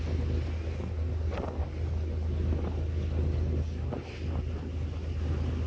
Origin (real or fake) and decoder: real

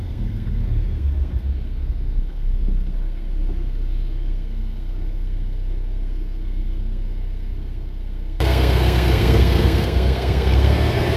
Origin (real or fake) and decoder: fake, codec, SNAC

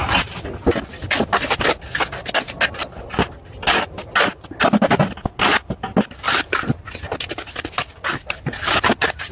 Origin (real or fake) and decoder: real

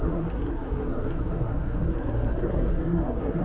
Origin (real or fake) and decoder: fake, codec, SNAC